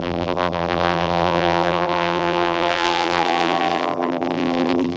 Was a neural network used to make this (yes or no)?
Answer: yes